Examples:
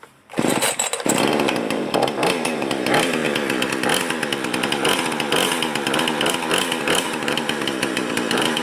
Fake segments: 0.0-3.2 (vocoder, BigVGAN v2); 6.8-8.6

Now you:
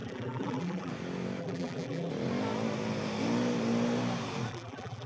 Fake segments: 0.0-0.9 (vocoder, BigVGAN v2); 1.4-2.1; 4.5-5.1

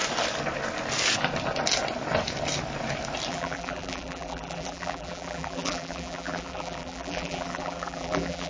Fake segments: 3.3-8.5 (vocoder, BigVGAN v2)

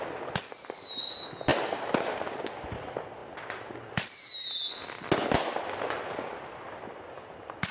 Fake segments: none